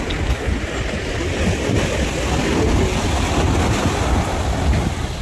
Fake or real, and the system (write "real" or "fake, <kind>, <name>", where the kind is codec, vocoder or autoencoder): real